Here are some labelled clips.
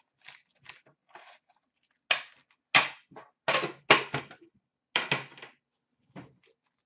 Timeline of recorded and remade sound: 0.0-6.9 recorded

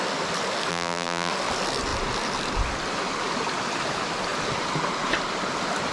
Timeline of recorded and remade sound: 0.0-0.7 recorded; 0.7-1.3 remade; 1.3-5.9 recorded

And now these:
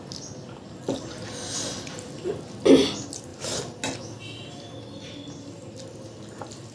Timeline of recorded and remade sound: 0.0-6.7 recorded